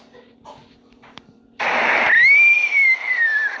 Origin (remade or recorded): remade